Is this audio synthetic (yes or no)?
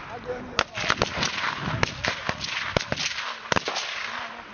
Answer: no